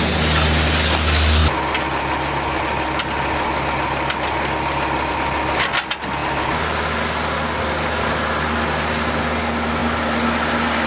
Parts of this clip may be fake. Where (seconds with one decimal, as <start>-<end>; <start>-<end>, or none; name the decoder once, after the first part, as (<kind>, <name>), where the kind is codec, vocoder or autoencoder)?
none